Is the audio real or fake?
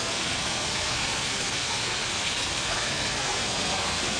fake